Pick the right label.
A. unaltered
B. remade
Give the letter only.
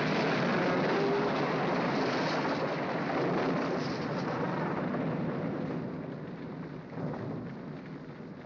A